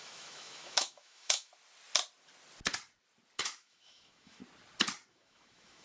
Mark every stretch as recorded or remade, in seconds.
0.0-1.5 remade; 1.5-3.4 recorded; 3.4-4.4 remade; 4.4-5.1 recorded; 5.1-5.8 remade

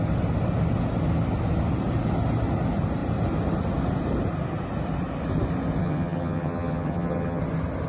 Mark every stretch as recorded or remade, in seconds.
0.0-5.8 recorded; 5.8-7.4 remade; 7.4-7.9 recorded